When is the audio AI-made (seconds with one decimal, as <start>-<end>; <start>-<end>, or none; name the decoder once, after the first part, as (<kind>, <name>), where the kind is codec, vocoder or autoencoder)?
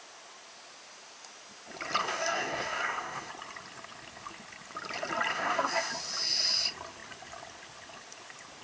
2.0-3.3 (codec, DAC); 5.3-5.9